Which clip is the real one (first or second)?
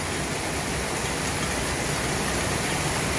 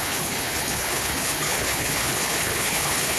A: first